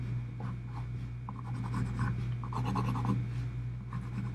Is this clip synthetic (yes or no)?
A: no